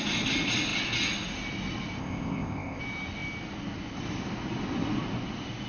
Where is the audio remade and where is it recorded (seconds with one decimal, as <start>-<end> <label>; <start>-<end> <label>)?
0.0-2.0 recorded; 2.0-2.8 remade; 2.8-5.7 recorded